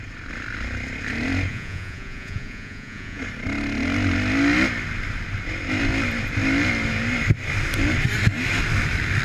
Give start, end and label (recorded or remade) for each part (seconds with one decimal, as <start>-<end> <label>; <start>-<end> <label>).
0.0-1.5 recorded; 1.5-3.2 remade; 3.2-9.2 recorded